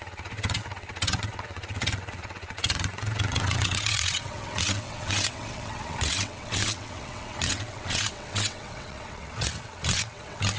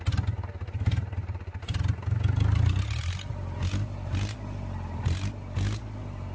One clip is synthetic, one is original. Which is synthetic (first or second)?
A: first